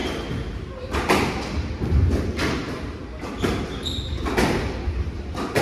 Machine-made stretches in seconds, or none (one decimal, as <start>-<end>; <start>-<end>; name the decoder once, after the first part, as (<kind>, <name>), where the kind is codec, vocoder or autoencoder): none